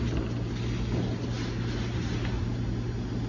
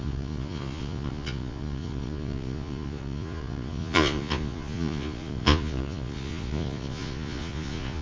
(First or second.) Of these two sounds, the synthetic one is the second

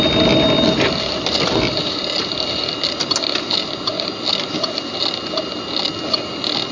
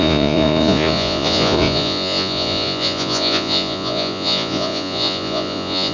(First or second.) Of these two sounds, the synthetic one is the second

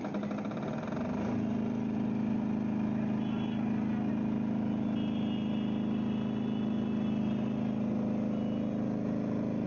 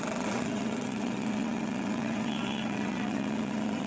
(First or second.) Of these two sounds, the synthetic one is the second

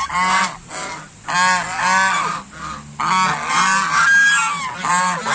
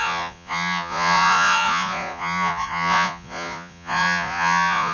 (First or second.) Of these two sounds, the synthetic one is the second